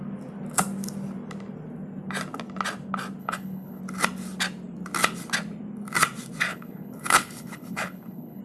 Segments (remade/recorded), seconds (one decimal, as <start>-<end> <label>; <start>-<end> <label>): 0.0-3.2 recorded; 3.2-3.8 remade; 3.8-6.5 recorded; 6.5-8.4 remade